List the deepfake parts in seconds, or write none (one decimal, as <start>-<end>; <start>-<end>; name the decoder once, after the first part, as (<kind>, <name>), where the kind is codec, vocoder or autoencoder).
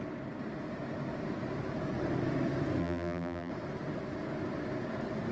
2.8-3.5 (vocoder, BigVGAN v2)